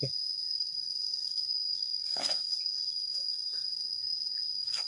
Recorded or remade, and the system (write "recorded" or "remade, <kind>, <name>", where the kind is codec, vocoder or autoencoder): remade, codec, SNAC